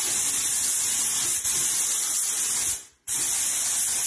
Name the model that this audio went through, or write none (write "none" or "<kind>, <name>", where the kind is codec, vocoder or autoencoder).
none